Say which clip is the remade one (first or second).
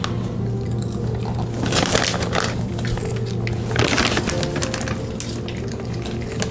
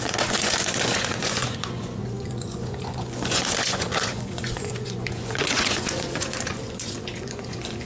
second